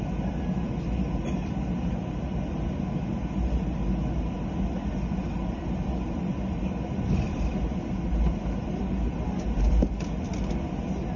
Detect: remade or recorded recorded